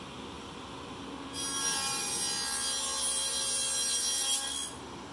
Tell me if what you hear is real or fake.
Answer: real